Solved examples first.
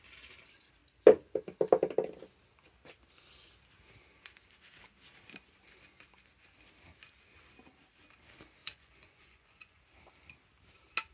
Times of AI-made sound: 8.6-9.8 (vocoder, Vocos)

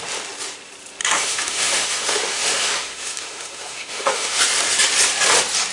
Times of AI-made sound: 1.0-4.4 (autoencoder, DAC-VAE)

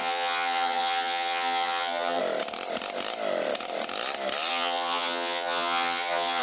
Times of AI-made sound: 0.0-2.2 (vocoder, HiFi-GAN); 4.5-6.4